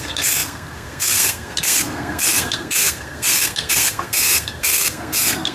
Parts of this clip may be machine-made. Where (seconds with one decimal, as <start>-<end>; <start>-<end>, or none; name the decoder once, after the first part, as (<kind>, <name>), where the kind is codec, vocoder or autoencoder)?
0.0-5.5 (codec, SNAC)